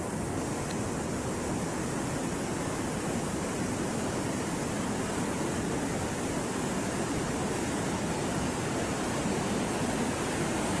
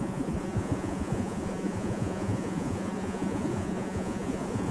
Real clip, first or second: first